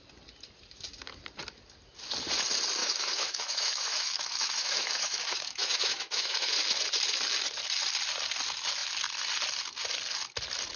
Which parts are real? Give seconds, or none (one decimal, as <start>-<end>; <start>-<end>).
0.0-2.8; 6.5-10.8